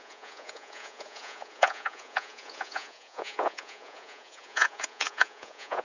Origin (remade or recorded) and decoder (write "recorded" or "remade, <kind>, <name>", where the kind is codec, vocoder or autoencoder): remade, vocoder, Vocos